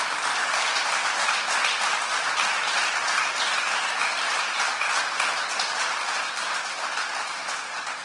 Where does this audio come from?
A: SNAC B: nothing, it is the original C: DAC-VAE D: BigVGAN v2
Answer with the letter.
B